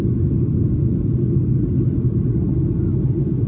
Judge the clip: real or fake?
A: real